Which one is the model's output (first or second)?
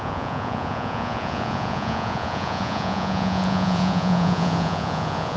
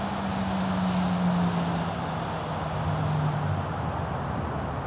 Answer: first